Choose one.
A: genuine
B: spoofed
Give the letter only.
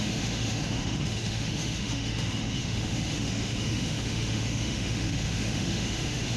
B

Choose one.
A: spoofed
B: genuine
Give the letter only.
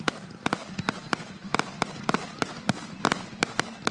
B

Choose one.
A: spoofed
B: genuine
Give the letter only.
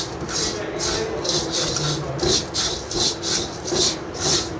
B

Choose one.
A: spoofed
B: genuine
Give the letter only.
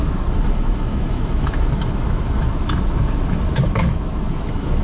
A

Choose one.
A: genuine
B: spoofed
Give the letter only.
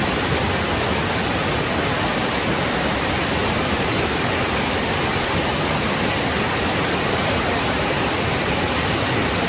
A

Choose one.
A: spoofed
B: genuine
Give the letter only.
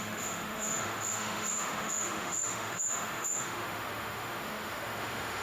A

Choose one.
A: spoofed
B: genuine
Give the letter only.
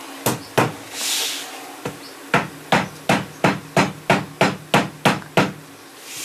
B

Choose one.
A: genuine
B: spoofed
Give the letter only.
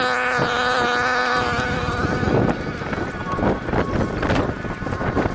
A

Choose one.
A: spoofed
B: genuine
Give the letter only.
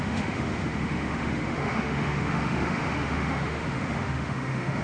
A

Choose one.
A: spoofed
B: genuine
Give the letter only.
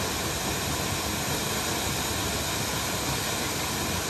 B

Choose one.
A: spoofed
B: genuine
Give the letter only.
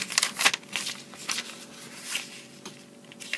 B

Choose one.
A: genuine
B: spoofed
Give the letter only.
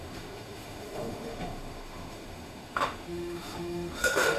B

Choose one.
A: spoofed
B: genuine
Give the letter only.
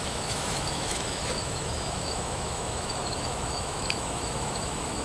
A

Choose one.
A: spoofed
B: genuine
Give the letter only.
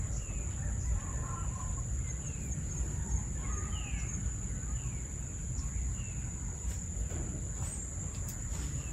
B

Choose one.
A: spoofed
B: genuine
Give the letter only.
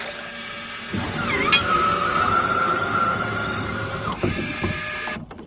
B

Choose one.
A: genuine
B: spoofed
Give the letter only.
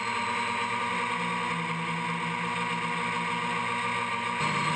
A